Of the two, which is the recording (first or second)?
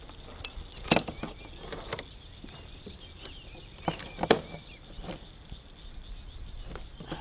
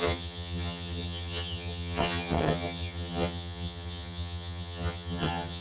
first